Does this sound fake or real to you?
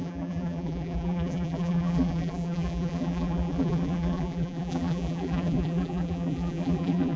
fake